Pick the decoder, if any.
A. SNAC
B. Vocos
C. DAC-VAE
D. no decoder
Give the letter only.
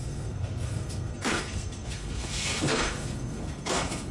A